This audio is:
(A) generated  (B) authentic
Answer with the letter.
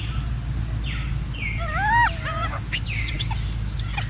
B